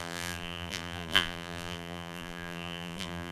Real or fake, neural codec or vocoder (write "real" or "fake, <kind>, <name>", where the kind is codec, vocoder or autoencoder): fake, vocoder, BigVGAN v2